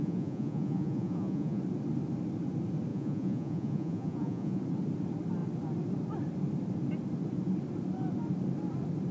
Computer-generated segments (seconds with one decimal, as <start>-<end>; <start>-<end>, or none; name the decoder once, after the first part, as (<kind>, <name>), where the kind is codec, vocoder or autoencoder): 0.0-1.6 (vocoder, Vocos); 2.9-4.6